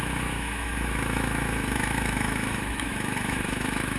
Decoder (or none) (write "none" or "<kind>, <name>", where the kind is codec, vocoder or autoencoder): autoencoder, DAC-VAE